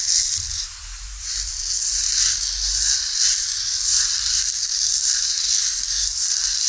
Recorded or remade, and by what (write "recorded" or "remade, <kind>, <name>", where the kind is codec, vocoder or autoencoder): remade, vocoder, BigVGAN v2